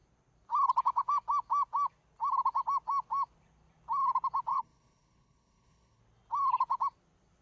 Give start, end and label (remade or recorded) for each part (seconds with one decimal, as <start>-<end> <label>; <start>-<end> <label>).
0.0-4.5 recorded; 4.5-6.0 remade; 6.0-7.4 recorded